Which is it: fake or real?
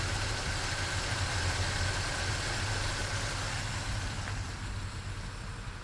real